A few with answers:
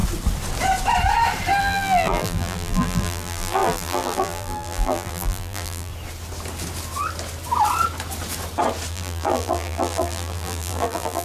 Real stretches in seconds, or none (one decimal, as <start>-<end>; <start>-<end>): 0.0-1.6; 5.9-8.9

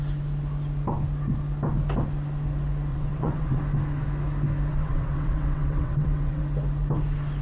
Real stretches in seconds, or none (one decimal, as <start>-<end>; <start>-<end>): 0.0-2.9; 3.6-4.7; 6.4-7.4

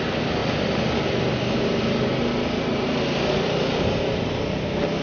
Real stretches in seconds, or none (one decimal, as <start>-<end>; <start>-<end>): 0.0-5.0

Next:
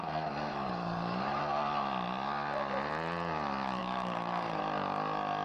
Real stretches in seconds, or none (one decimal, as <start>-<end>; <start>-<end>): 0.0-0.5; 1.4-3.8; 4.6-5.4